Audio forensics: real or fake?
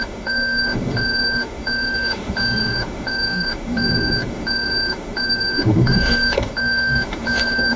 fake